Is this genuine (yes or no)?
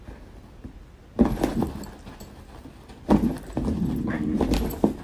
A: yes